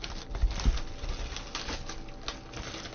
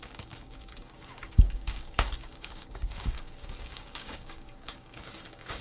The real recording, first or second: first